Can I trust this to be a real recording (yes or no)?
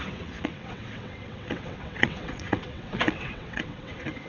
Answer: no